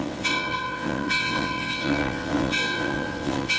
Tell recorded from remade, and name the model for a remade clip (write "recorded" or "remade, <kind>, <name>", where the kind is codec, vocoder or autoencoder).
remade, vocoder, WaveNeXt